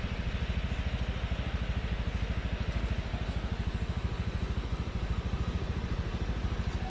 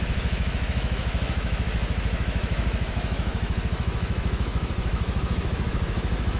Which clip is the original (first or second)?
first